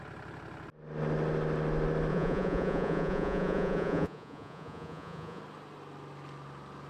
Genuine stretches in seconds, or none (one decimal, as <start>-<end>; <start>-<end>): 0.0-2.1; 5.4-6.9